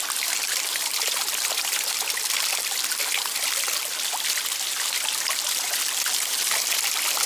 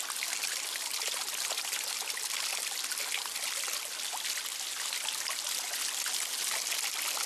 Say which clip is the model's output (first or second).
first